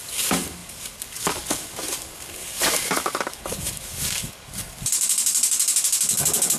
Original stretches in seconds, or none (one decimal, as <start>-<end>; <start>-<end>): none